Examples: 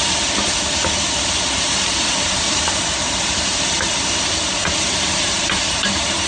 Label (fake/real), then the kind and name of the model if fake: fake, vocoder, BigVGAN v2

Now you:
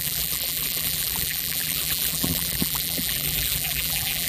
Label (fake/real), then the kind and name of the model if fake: fake, vocoder, BigVGAN v2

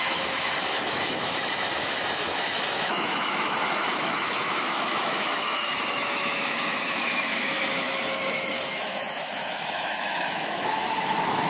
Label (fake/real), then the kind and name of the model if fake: fake, autoencoder, DAC-VAE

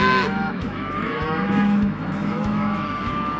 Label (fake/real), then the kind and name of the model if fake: fake, autoencoder, DAC-VAE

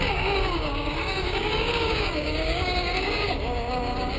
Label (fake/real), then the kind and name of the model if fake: fake, codec, DAC